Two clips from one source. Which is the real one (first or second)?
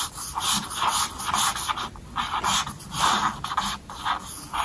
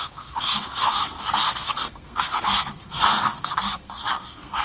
first